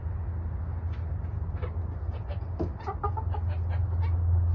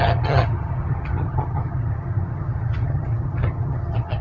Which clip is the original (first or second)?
first